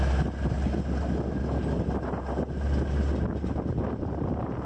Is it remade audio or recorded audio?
recorded